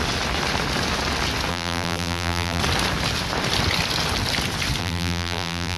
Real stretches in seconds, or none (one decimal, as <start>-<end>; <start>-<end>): 0.0-1.5; 2.6-4.8